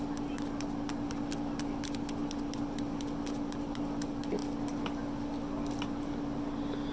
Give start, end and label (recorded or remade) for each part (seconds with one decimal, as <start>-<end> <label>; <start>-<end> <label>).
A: 0.0-6.9 recorded